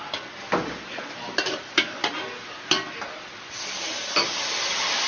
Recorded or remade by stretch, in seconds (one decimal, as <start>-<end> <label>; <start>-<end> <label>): 0.0-5.1 recorded